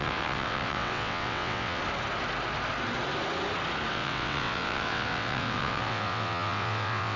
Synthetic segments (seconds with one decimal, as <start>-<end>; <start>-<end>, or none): 0.0-1.8; 3.9-7.2